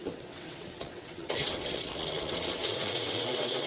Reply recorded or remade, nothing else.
remade